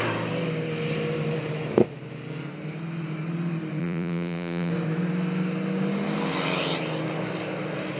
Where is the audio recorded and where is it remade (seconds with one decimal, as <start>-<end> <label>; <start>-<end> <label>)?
0.0-3.8 recorded; 3.8-4.7 remade; 4.7-8.0 recorded